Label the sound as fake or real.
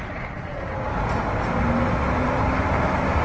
real